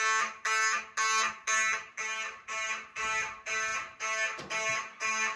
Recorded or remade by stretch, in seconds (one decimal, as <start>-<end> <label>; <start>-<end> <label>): 0.0-5.4 recorded